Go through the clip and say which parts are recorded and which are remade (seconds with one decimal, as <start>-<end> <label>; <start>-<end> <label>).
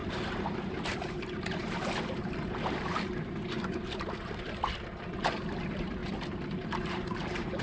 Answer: 0.0-4.6 remade; 4.6-6.0 recorded; 6.0-7.6 remade